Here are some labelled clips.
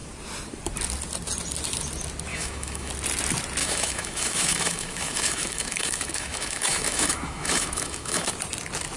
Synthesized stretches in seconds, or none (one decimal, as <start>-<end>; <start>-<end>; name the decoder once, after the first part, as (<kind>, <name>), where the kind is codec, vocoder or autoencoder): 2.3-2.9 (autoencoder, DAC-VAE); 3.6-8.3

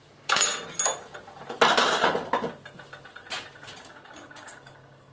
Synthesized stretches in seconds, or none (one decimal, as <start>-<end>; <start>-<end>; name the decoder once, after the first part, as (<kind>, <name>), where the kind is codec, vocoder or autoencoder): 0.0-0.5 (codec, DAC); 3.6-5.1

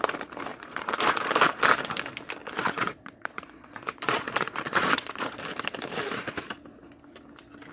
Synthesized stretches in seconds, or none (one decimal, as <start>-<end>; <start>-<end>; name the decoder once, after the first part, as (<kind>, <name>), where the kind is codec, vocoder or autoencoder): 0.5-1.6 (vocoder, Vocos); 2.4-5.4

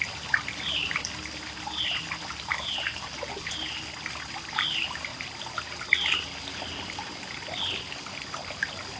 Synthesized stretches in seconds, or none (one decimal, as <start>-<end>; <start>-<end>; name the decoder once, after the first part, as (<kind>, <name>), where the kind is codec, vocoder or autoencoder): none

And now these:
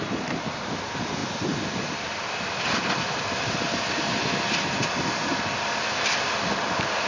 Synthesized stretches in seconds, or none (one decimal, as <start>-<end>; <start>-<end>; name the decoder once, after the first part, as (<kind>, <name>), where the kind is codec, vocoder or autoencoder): none

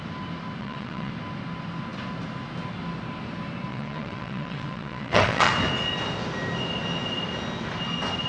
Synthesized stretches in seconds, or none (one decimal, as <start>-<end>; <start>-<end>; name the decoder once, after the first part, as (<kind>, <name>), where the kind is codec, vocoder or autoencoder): 0.6-1.1 (vocoder, WaveNeXt); 3.7-5.5

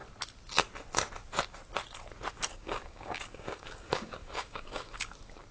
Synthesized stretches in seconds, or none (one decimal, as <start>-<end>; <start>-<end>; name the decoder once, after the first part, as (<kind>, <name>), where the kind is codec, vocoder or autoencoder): 2.5-5.1 (codec, DAC)